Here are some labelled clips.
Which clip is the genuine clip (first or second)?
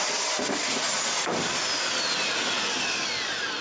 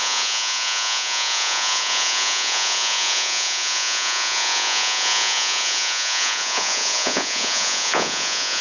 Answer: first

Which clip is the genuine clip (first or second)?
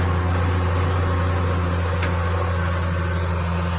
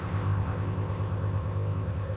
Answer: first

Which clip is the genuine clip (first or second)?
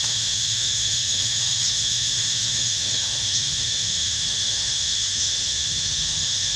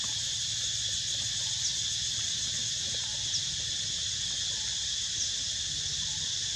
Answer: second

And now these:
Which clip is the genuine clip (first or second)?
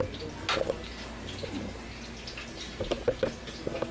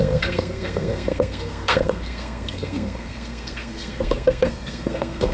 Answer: first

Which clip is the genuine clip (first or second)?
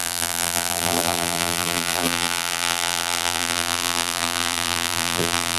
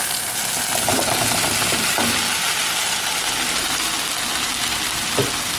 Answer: second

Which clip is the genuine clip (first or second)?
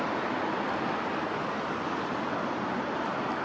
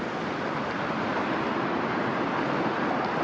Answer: first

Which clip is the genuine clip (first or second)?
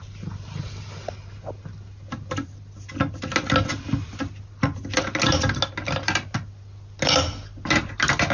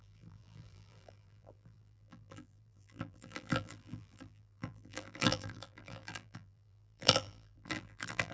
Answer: first